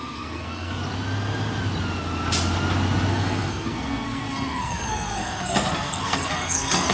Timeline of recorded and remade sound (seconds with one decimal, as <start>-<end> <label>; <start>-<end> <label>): 0.0-0.8 remade; 0.8-3.1 recorded; 3.1-6.9 remade